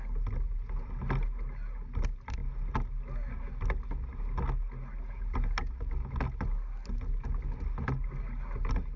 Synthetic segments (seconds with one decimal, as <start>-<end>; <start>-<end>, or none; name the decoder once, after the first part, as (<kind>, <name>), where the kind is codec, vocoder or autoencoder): none